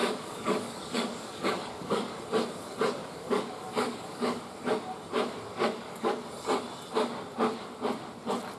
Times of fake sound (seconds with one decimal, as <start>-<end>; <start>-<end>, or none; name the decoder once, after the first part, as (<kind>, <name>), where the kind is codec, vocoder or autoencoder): 0.0-2.2 (codec, DAC); 3.0-4.4; 5.5-6.1